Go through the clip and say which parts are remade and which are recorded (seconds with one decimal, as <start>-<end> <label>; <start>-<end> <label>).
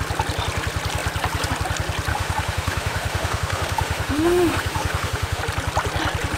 0.0-2.1 recorded; 2.1-5.4 remade; 5.4-6.4 recorded